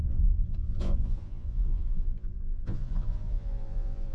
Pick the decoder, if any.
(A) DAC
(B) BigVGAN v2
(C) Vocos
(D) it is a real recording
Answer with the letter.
C